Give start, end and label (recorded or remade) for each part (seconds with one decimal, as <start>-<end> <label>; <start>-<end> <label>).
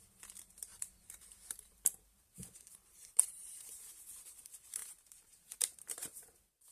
0.0-6.7 remade